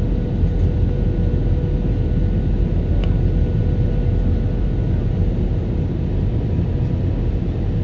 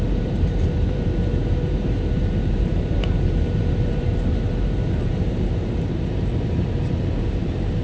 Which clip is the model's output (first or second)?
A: second